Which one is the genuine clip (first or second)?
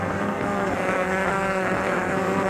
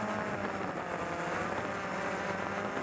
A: second